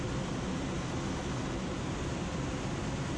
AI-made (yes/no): no